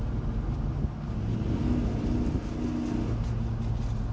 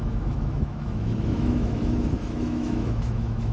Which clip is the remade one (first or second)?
second